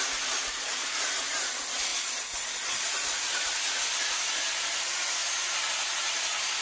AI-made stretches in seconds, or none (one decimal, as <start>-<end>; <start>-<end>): none